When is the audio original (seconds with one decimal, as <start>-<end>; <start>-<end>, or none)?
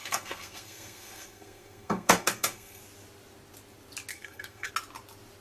2.8-4.1; 4.7-5.4